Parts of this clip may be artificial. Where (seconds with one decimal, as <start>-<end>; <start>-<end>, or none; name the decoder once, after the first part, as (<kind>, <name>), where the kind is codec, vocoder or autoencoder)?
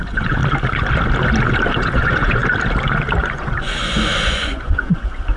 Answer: 0.0-0.4 (vocoder, Vocos); 1.7-2.4; 3.2-5.4